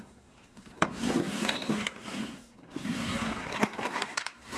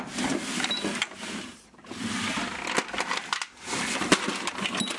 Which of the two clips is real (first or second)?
second